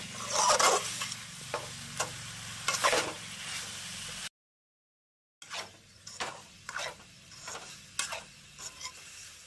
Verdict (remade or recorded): recorded